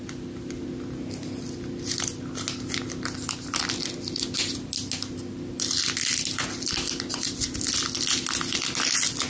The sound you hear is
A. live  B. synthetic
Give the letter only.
A